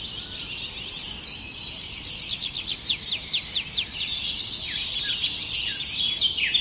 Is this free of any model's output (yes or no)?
yes